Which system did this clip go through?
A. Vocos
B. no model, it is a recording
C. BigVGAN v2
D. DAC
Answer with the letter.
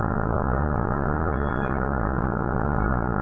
A